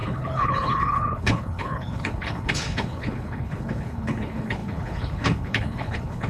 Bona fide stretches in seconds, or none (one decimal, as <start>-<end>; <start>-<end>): none